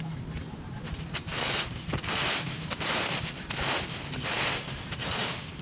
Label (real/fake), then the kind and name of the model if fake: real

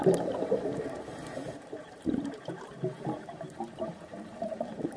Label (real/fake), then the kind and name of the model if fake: fake, vocoder, BigVGAN v2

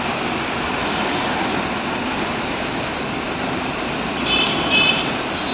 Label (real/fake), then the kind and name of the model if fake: fake, vocoder, BigVGAN v2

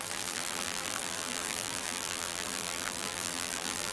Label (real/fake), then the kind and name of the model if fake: fake, vocoder, BigVGAN v2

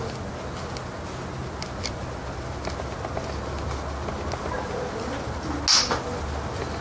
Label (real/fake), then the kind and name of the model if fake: real